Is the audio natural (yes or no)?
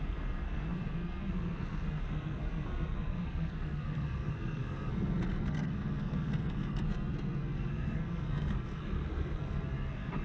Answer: no